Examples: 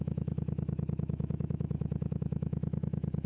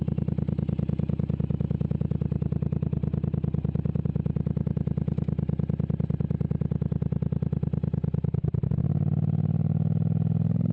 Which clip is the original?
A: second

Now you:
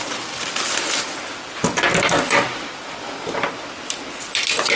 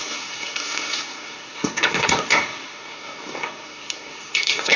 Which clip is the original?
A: first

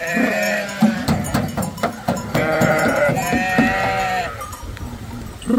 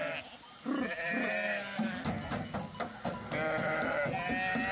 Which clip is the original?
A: second